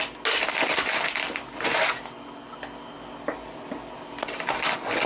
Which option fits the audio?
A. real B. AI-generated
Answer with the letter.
A